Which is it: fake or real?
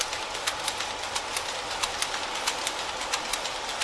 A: real